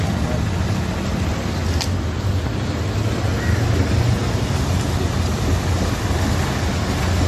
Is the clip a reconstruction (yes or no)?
no